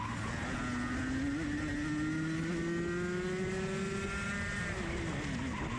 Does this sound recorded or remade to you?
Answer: recorded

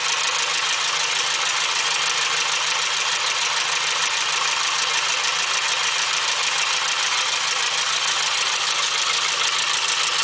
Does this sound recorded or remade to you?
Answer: recorded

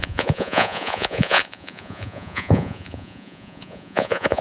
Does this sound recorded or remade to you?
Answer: remade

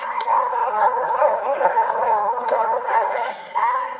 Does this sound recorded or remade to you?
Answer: remade